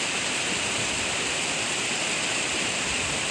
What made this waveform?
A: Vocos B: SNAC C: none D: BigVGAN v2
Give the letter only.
D